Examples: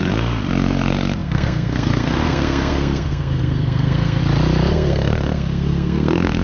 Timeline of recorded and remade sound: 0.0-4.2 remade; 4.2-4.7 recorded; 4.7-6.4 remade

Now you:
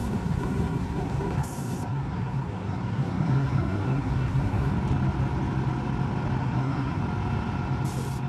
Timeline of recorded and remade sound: 0.0-4.7 remade; 4.7-6.4 recorded; 6.4-7.0 remade; 7.0-8.3 recorded

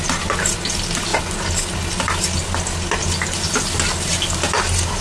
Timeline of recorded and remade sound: 0.0-5.0 recorded

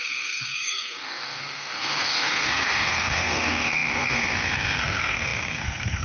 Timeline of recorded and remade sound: 0.0-6.0 remade

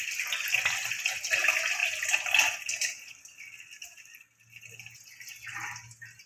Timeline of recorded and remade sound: 0.0-6.3 recorded

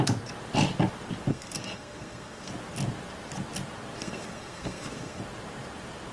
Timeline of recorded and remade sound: 0.0-1.3 recorded; 1.3-2.5 remade; 2.5-4.0 recorded; 4.0-5.2 remade; 5.2-6.1 recorded

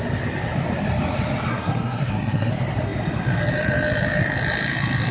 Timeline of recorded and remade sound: 0.0-1.5 recorded; 1.5-2.5 remade; 2.5-5.1 recorded